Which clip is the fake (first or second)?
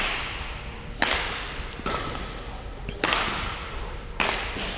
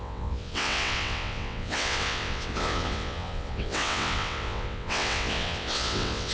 second